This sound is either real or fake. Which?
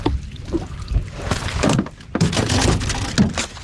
real